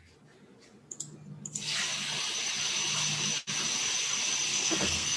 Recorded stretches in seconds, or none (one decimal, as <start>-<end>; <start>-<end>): 0.0-4.5